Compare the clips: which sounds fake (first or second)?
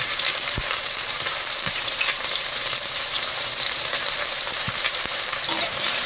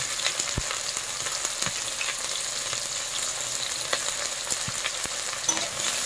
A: first